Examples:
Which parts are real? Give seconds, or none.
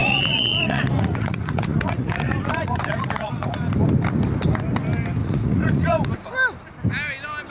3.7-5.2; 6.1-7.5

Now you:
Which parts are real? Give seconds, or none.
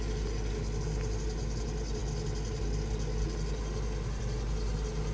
0.0-5.1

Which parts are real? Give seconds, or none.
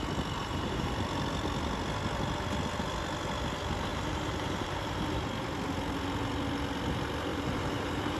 0.0-0.4; 0.9-3.9; 5.0-7.3